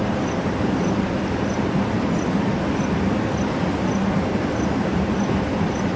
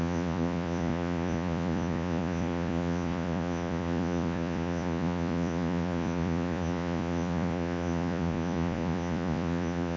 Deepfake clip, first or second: second